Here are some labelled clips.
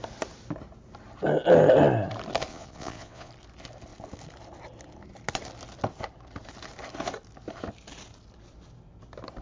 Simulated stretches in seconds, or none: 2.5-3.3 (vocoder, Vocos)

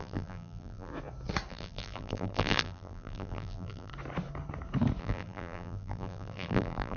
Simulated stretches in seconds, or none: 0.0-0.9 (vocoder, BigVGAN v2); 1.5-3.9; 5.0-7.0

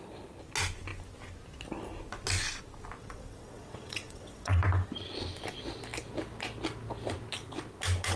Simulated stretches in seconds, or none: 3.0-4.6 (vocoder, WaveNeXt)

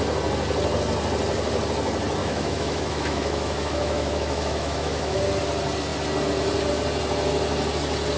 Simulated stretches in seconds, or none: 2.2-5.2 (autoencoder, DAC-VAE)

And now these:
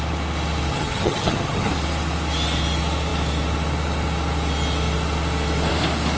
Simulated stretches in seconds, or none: 0.7-1.7 (vocoder, HiFi-GAN)